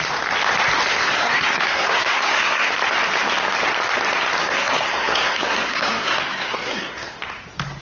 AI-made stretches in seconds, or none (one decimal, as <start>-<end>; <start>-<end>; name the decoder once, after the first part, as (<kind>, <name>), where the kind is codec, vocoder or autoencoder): 0.9-2.7 (codec, SNAC); 4.4-7.2